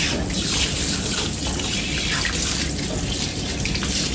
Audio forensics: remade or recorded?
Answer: recorded